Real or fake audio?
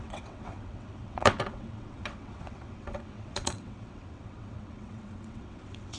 fake